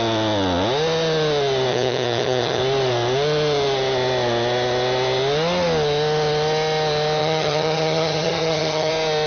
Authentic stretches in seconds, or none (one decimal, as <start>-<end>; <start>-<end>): 0.0-1.7; 2.6-7.2; 8.9-9.3